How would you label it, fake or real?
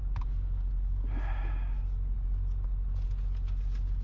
real